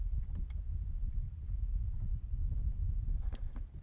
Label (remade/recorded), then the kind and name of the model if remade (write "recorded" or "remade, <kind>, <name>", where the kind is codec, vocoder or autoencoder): recorded